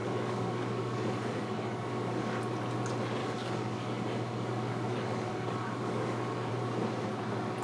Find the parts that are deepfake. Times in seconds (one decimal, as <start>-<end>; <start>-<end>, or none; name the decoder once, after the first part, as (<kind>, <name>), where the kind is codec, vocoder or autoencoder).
0.0-2.4 (codec, DAC); 3.2-6.5